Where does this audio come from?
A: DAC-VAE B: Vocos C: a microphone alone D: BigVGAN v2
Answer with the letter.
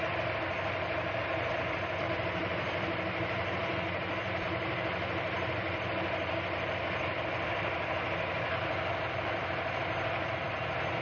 D